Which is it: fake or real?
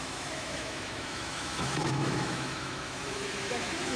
fake